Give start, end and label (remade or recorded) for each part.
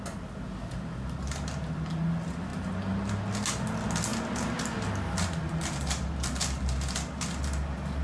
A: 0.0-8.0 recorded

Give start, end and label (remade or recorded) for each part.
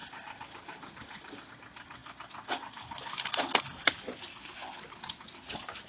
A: 0.0-1.5 remade; 1.5-5.9 recorded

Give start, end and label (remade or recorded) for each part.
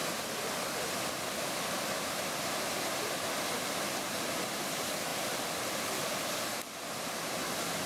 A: 0.0-1.7 recorded; 1.7-7.9 remade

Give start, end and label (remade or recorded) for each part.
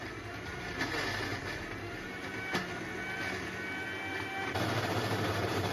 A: 0.0-2.6 remade; 2.6-4.1 recorded; 4.1-5.7 remade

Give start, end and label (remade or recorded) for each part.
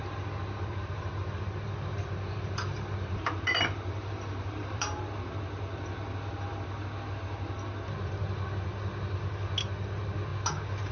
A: 0.0-5.0 remade; 5.0-10.9 recorded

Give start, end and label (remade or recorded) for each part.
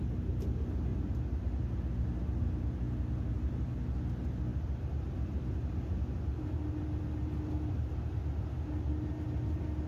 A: 0.0-9.9 recorded